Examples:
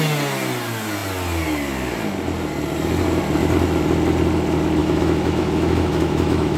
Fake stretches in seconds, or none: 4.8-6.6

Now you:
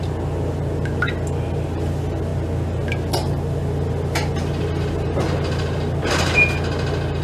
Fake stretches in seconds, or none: none

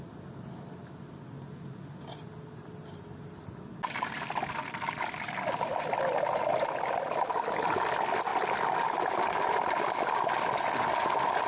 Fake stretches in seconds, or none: none

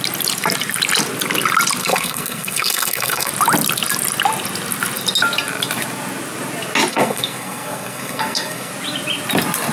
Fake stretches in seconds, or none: 1.8-3.3; 6.9-8.7